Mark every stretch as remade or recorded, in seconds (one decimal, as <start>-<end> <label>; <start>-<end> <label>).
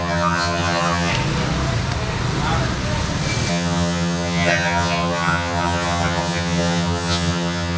0.0-1.1 remade; 1.1-3.5 recorded; 3.5-7.8 remade